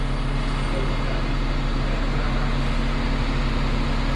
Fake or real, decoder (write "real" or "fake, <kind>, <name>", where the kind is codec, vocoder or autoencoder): real